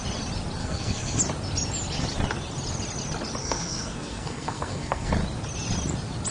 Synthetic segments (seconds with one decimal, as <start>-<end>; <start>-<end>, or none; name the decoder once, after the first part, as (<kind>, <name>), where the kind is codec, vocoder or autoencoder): 0.6-1.2 (codec, SNAC); 3.4-5.1